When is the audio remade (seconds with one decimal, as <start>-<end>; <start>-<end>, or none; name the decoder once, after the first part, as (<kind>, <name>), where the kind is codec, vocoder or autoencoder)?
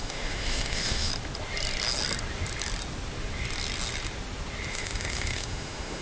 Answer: 0.0-1.1 (autoencoder, DAC-VAE); 4.7-6.0